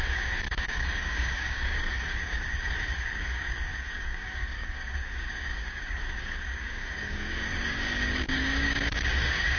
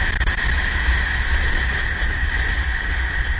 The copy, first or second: first